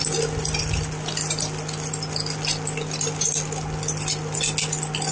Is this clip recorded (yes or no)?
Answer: yes